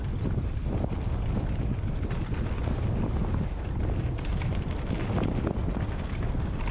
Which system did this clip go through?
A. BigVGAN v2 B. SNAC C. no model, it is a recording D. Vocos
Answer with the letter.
C